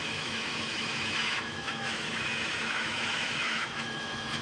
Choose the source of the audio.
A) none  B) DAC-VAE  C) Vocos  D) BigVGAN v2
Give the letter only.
B